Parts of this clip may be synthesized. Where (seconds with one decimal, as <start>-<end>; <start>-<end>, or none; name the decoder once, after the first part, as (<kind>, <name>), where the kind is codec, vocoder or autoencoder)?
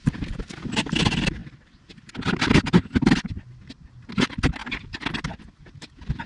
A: none